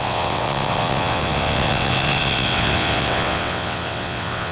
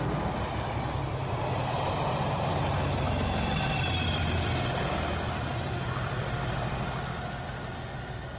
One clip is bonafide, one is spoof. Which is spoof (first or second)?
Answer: first